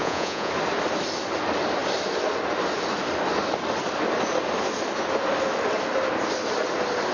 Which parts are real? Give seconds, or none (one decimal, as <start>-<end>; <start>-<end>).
0.5-7.1

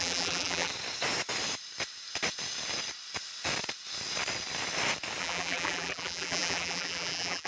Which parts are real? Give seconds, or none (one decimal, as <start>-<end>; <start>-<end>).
0.7-5.2